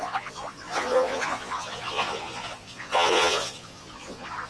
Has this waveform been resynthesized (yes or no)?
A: yes